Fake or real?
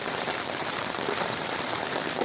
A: fake